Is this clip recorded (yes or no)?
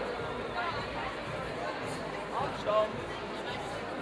yes